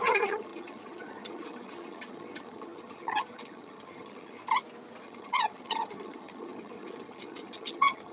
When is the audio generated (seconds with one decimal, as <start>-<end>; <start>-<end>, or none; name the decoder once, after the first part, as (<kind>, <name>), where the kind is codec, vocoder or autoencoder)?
0.0-4.4 (vocoder, HiFi-GAN); 5.0-8.1